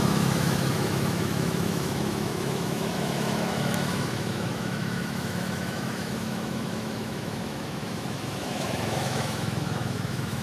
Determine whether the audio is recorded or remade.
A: remade